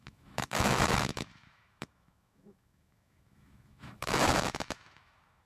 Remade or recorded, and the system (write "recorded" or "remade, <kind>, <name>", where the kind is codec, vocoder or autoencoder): remade, autoencoder, DAC-VAE